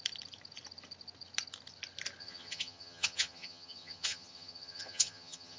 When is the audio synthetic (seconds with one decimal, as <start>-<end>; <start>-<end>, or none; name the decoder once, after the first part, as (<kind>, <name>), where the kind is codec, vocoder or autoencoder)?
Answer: 2.2-5.6 (vocoder, HiFi-GAN)